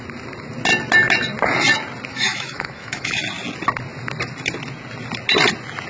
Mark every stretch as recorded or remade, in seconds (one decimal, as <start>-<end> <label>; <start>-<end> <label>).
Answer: 0.0-2.1 recorded; 2.1-3.2 remade; 3.2-5.9 recorded